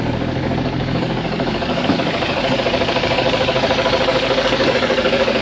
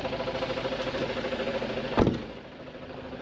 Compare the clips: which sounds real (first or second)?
second